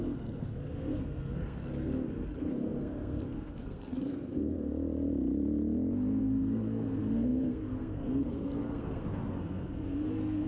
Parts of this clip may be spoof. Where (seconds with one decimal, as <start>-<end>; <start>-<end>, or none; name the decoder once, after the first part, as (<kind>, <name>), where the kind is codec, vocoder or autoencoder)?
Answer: 0.0-4.7 (codec, SNAC); 6.2-10.5